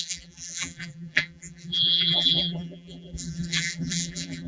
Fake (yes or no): yes